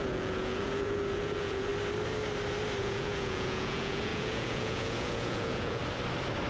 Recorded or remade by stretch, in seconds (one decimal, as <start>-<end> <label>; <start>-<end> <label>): 0.0-1.7 remade; 1.7-2.8 recorded; 2.8-5.8 remade; 5.8-6.5 recorded